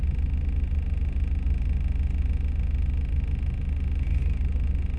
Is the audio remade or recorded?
recorded